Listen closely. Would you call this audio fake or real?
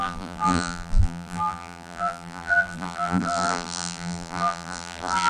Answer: fake